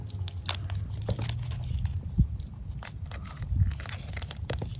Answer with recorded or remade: recorded